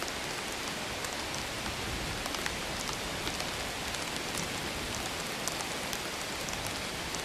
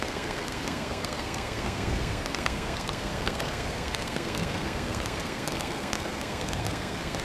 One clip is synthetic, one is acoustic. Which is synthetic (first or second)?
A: second